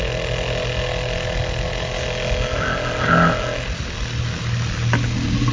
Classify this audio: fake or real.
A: real